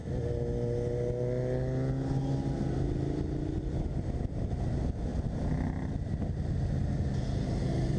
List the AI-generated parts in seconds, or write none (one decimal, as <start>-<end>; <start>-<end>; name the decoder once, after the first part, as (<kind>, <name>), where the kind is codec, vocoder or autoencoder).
none